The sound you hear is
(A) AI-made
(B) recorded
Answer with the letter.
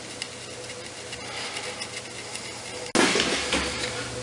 B